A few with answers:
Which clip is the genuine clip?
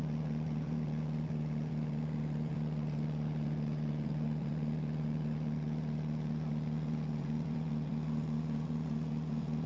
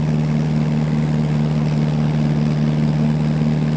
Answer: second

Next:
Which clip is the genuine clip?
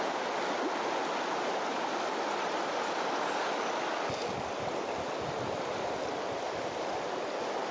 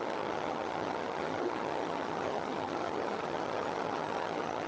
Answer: first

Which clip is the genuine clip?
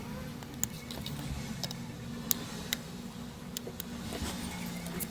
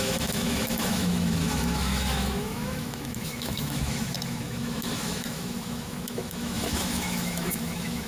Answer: first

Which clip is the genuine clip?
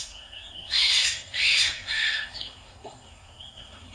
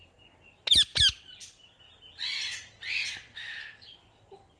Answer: second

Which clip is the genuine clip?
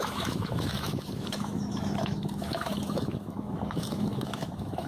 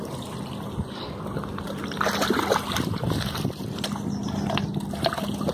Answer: second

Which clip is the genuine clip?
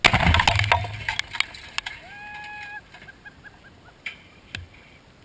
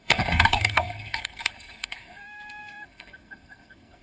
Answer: first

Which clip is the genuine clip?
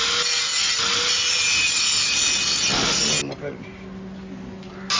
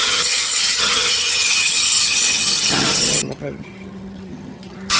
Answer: first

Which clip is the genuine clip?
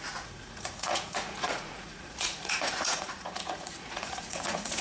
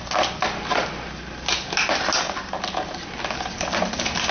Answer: second